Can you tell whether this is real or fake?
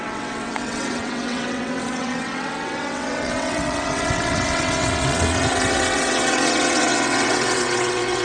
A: fake